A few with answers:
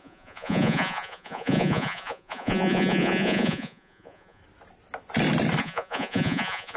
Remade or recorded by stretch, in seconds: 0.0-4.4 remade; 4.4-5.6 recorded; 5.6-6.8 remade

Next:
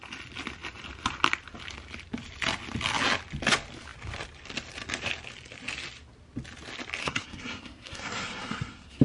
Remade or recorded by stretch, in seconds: 0.0-7.0 recorded; 7.0-9.0 remade

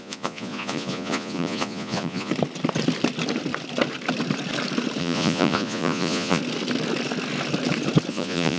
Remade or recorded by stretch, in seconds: 0.0-2.3 remade; 2.3-5.0 recorded; 5.0-6.4 remade; 6.4-8.1 recorded; 8.1-8.6 remade

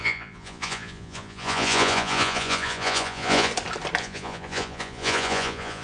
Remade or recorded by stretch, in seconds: 0.0-3.5 remade; 3.5-4.0 recorded; 4.0-5.8 remade

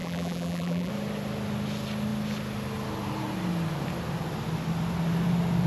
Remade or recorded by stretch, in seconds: 0.0-0.9 remade; 0.9-5.7 recorded

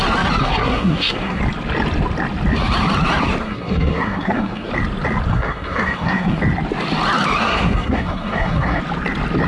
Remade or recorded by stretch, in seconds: 0.0-0.4 recorded; 0.4-1.4 remade; 1.4-3.4 recorded; 3.4-4.7 remade; 4.7-5.3 recorded; 5.3-6.4 remade; 6.4-7.4 recorded; 7.4-8.8 remade; 8.8-9.5 recorded

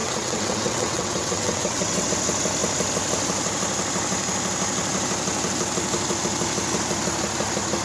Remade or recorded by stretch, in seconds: 0.0-2.1 remade; 2.1-7.8 recorded

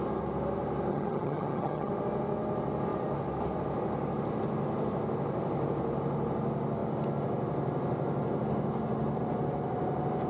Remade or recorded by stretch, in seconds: 0.0-0.9 recorded; 0.9-1.9 remade; 1.9-10.3 recorded